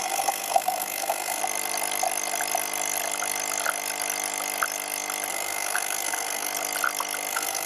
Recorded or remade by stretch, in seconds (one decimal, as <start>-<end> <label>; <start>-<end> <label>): 0.0-1.4 remade; 1.4-5.3 recorded; 5.3-6.5 remade; 6.5-7.3 recorded; 7.3-7.7 remade